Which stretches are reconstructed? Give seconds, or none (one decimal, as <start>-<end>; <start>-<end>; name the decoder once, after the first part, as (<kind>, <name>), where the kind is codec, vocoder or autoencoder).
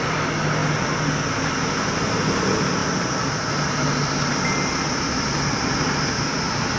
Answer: none